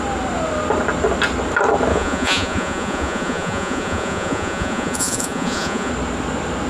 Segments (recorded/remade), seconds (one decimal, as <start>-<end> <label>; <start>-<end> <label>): 0.0-1.9 recorded; 1.9-5.9 remade; 5.9-6.7 recorded